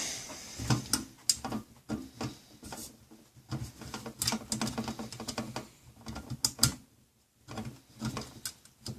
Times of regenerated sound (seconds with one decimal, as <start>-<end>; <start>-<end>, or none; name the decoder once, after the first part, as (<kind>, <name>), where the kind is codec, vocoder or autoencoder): 6.7-7.4 (vocoder, BigVGAN v2)

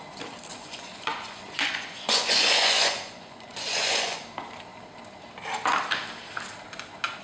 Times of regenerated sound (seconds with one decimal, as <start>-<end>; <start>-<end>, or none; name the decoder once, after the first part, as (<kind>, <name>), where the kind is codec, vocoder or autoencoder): 0.5-4.2 (vocoder, Vocos)

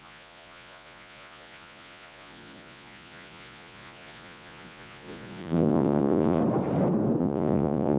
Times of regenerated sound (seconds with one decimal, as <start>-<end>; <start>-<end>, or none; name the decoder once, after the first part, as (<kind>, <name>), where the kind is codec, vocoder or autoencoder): 0.0-6.4 (vocoder, Vocos); 7.2-8.0

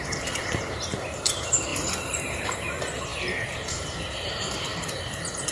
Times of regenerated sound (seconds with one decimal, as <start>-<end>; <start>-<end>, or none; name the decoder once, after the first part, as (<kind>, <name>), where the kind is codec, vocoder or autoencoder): 0.0-5.5 (vocoder, BigVGAN v2)

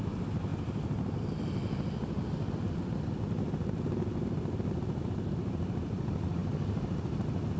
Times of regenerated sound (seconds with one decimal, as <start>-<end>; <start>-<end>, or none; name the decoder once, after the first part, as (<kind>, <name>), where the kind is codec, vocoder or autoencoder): none